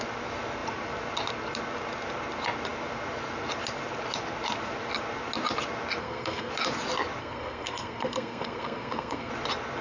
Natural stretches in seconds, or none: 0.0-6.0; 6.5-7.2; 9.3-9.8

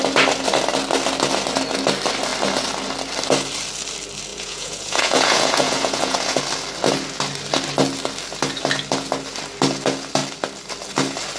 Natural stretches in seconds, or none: 0.0-4.3; 6.4-11.4

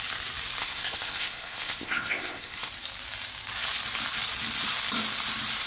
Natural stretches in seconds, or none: 0.0-0.6; 2.7-5.7

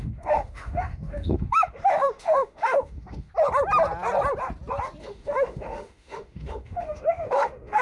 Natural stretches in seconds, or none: 3.3-5.0